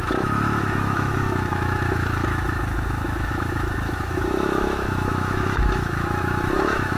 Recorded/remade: remade